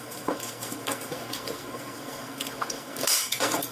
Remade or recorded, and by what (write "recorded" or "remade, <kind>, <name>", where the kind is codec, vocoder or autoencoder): remade, codec, SNAC